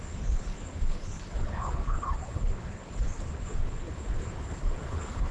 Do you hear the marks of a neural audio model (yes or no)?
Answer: yes